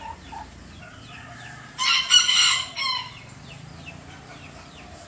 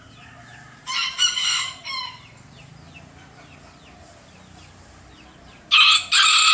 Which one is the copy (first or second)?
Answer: first